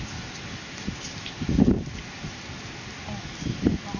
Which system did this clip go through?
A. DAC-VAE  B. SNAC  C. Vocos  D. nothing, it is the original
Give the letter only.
D